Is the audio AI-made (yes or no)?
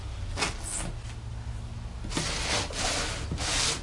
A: no